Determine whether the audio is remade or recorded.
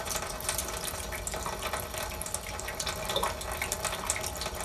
recorded